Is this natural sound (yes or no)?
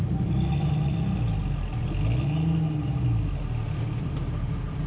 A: yes